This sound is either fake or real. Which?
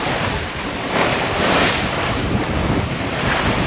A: fake